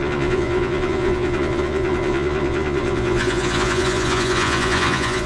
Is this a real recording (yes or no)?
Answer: no